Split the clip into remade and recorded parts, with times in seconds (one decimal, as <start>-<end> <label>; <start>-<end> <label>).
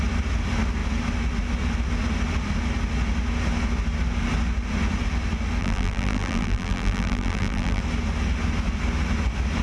0.0-5.6 recorded; 5.6-7.8 remade; 7.8-9.6 recorded